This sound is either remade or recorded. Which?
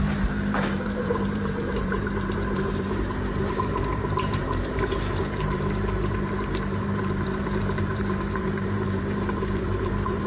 remade